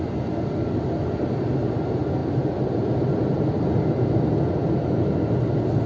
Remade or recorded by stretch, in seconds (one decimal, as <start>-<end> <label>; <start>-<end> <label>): 0.0-5.9 recorded

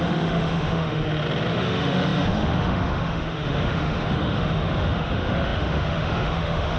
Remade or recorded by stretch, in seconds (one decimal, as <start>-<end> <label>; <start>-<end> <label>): 0.0-1.0 remade; 1.0-1.5 recorded; 1.5-6.8 remade

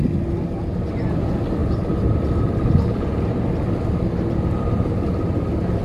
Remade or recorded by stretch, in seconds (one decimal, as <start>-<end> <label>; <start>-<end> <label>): 0.0-5.8 recorded

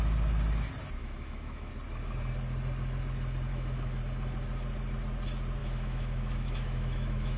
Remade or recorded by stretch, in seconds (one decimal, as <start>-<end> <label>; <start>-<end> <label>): 0.0-1.0 recorded; 1.0-1.7 remade; 1.7-3.5 recorded; 3.5-4.0 remade; 4.0-5.6 recorded; 5.6-7.4 remade